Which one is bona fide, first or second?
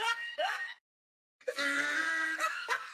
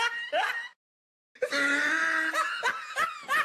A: second